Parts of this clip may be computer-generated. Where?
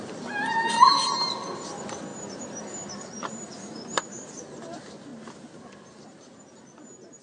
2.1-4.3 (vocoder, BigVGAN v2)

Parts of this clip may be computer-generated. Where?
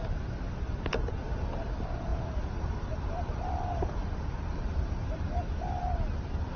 2.1-5.8 (vocoder, BigVGAN v2)